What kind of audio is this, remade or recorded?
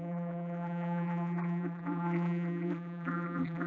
remade